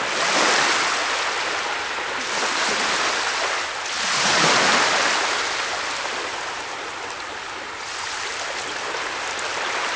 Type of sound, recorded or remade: recorded